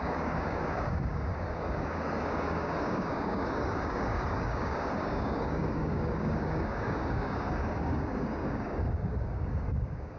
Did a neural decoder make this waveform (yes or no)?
yes